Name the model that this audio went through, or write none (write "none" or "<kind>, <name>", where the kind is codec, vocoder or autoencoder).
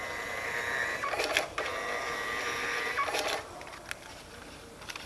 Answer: none